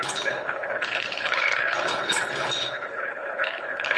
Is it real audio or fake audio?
fake